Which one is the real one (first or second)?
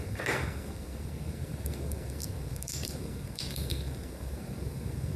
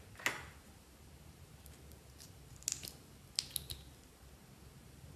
second